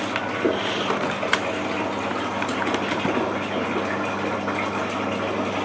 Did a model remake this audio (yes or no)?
no